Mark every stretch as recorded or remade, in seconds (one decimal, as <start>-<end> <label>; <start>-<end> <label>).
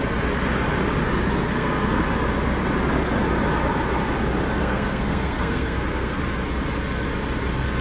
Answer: 0.0-1.4 recorded; 1.4-2.0 remade; 2.0-4.6 recorded; 4.6-6.2 remade; 6.2-7.8 recorded